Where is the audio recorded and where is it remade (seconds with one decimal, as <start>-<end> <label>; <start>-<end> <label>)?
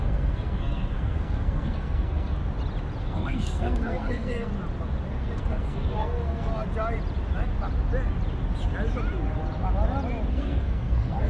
0.0-2.4 remade; 2.4-3.0 recorded; 3.0-4.5 remade; 4.5-5.1 recorded; 5.1-6.5 remade; 6.5-10.3 recorded; 10.3-11.3 remade